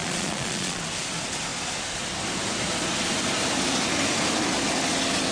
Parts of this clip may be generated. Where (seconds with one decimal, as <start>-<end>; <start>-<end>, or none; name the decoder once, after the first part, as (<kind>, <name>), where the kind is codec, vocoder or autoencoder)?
0.0-0.8 (vocoder, Vocos)